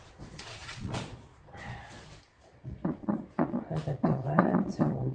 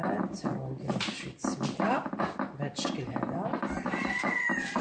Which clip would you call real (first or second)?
second